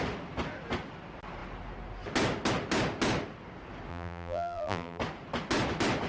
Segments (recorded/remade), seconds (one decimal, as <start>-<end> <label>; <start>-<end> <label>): 0.0-3.9 recorded; 3.9-5.0 remade; 5.0-6.1 recorded